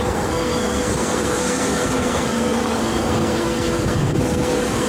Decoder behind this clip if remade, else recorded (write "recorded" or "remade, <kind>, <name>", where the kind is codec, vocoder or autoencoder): remade, codec, SNAC